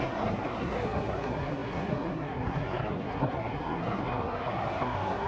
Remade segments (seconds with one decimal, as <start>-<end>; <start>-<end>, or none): 0.0-5.3